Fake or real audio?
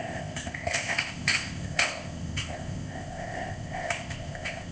fake